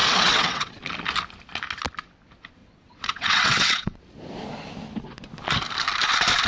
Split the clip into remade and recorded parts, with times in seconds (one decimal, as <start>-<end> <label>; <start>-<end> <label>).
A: 0.0-0.8 remade; 0.8-2.6 recorded; 2.6-4.0 remade; 4.0-6.5 recorded